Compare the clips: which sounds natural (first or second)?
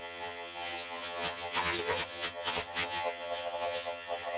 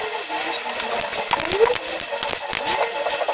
second